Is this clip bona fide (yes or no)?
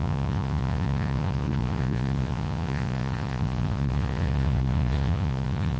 no